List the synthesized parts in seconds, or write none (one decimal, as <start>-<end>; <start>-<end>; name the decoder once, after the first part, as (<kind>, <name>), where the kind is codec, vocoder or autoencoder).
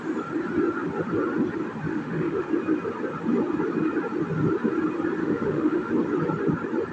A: 1.9-2.5 (autoencoder, DAC-VAE); 5.2-5.9